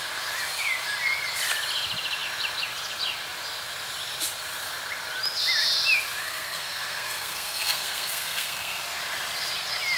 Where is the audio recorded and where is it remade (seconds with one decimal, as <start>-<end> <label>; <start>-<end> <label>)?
0.0-6.2 recorded; 6.2-8.8 remade; 8.8-10.0 recorded